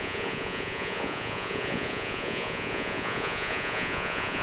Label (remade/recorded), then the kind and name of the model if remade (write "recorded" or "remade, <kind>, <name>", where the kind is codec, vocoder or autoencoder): remade, vocoder, Vocos